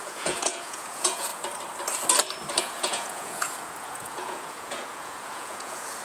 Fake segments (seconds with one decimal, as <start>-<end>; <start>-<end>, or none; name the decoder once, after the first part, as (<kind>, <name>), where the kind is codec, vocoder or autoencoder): 0.0-1.3 (vocoder, Vocos); 2.6-6.0